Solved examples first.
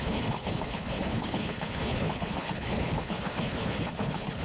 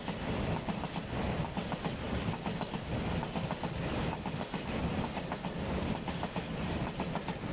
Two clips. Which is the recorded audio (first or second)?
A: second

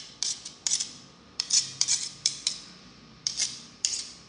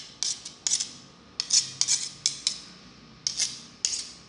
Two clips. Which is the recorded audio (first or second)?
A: second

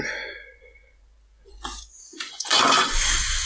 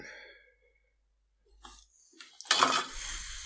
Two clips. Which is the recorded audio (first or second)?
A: second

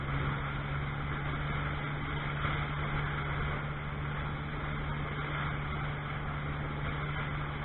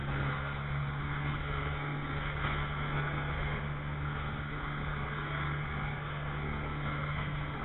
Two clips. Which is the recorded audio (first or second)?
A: first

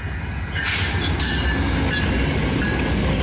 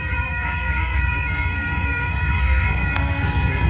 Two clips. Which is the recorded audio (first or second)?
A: first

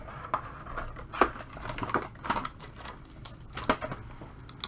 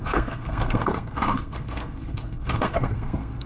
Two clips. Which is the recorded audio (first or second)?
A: first